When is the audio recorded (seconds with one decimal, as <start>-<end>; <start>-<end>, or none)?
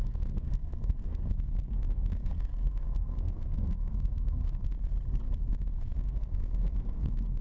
4.9-5.5